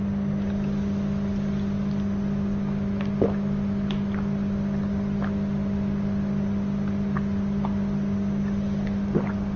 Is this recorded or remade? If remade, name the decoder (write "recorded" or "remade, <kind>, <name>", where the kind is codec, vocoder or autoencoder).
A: recorded